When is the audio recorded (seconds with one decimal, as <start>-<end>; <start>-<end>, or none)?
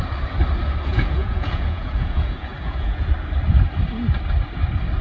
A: 0.0-0.9; 3.1-5.0